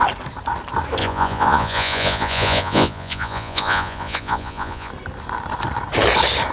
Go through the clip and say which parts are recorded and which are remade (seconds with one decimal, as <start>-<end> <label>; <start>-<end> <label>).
0.0-1.0 recorded; 1.0-4.9 remade; 4.9-6.5 recorded